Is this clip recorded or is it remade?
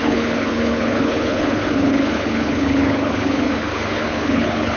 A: remade